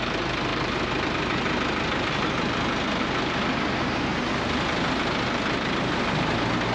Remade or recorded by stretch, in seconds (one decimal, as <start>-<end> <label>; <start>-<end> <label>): 0.0-0.5 recorded; 0.5-1.1 remade; 1.1-6.7 recorded